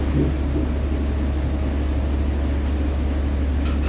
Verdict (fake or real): real